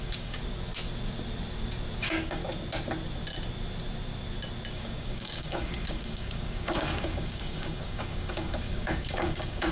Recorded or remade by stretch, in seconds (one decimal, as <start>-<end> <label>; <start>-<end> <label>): 0.0-0.4 remade; 0.4-2.0 recorded; 2.0-2.4 remade; 2.4-4.7 recorded; 4.7-9.7 remade